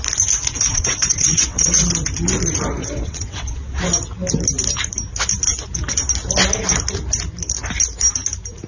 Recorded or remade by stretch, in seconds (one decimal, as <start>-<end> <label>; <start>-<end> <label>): 0.0-0.7 recorded; 0.7-1.9 remade; 1.9-2.8 recorded; 2.8-3.8 remade; 3.8-8.7 recorded